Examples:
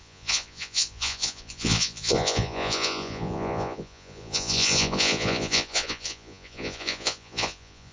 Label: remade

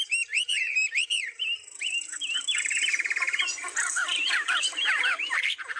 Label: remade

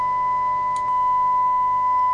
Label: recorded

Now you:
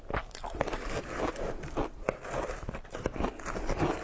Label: recorded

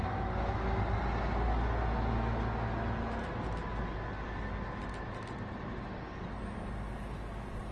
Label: recorded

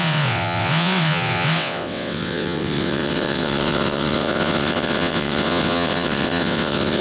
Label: remade